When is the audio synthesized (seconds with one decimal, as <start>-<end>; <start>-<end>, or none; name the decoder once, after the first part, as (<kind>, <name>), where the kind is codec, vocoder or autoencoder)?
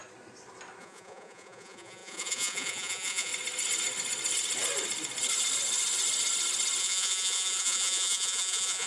0.8-3.3 (vocoder, Vocos); 6.8-8.9